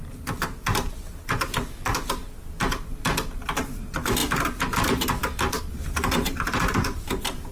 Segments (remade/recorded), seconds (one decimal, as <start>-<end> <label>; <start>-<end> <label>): 0.0-7.5 recorded